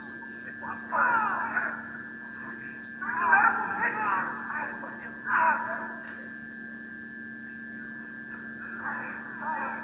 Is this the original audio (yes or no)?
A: yes